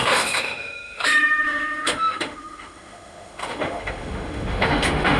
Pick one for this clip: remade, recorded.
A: remade